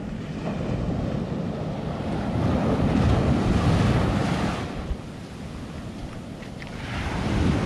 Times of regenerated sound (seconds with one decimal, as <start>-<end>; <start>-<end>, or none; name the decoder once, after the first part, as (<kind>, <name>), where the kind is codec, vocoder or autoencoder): none